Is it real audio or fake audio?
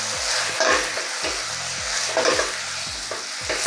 real